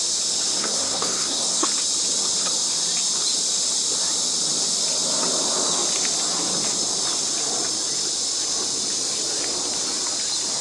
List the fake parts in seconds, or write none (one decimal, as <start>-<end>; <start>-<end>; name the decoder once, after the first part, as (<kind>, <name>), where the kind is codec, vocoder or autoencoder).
0.6-1.7 (codec, SNAC)